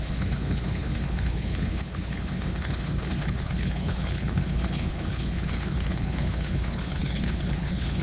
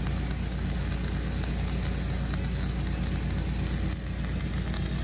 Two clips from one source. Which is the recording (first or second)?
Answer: second